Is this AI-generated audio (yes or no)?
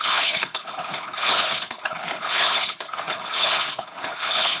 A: yes